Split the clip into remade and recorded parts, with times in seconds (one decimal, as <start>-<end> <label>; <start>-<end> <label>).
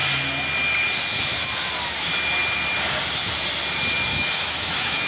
0.0-4.1 recorded; 4.1-5.1 remade